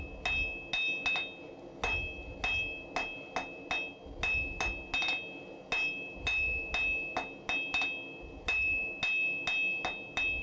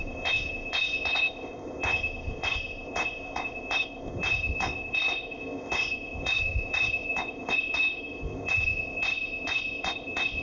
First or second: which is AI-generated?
second